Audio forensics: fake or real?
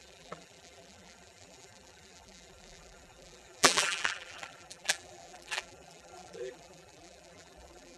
fake